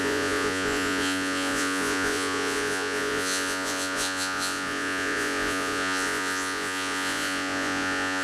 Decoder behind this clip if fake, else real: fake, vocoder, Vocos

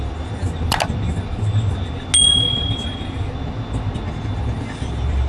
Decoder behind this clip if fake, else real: real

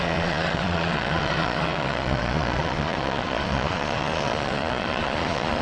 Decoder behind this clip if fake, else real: fake, vocoder, Vocos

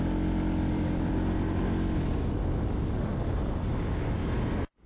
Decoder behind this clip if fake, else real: real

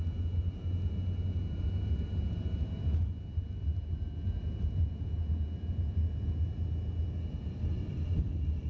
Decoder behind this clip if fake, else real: real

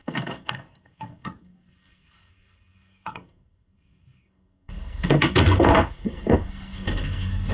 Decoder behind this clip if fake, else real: fake, codec, SNAC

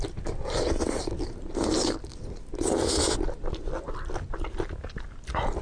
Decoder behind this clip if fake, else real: real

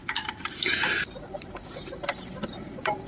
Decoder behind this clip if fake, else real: fake, vocoder, BigVGAN v2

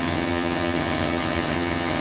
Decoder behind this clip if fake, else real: fake, vocoder, HiFi-GAN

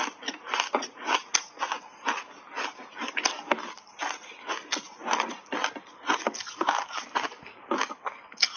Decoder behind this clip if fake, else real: real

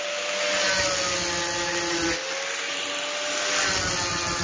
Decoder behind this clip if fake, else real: real